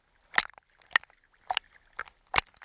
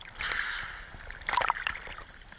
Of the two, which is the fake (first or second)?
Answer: second